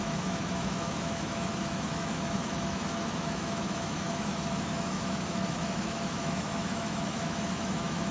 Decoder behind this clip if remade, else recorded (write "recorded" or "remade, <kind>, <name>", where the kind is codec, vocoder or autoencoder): remade, autoencoder, DAC-VAE